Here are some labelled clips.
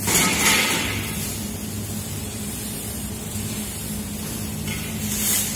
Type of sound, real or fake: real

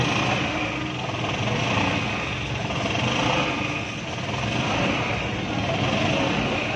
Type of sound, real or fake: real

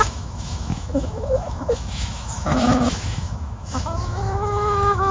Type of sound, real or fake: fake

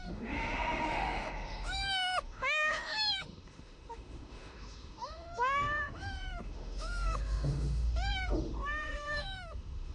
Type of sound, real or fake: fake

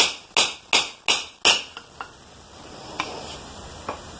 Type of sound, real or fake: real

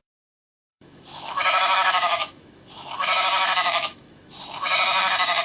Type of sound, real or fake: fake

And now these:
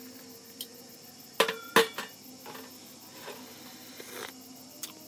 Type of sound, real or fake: real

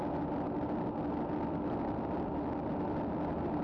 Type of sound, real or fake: real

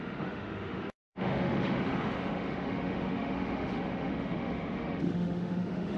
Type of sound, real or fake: fake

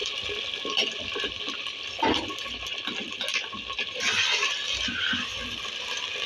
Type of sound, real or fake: real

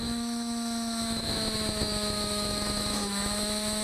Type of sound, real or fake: fake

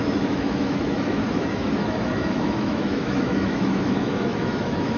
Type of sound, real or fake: fake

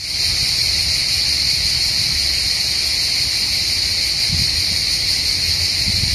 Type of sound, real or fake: real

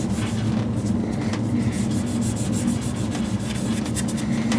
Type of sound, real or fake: real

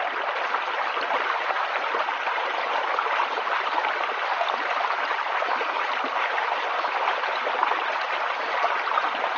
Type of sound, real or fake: real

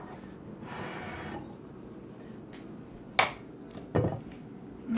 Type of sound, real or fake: real